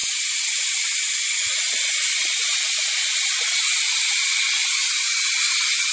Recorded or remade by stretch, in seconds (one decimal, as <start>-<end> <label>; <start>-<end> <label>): 0.0-5.9 recorded